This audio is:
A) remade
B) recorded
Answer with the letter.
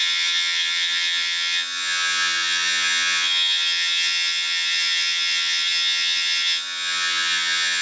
A